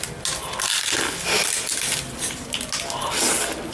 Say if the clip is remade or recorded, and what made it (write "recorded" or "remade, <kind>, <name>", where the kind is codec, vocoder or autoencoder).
recorded